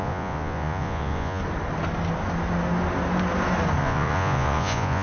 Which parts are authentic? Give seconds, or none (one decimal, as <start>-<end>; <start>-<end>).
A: 1.4-3.8